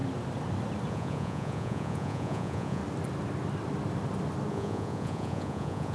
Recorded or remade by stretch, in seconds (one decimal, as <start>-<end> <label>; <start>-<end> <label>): 0.0-0.9 recorded; 0.9-2.8 remade; 2.8-4.5 recorded; 4.5-5.9 remade